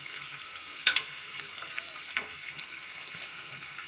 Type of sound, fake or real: fake